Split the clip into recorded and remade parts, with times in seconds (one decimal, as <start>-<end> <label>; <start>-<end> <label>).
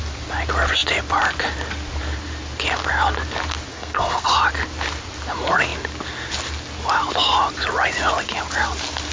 0.0-3.7 recorded; 3.7-4.3 remade; 4.3-9.1 recorded